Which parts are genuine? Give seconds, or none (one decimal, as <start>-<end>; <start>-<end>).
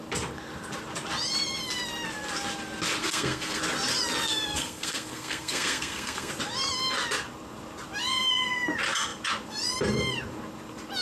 0.0-3.0; 3.6-4.5; 6.3-11.0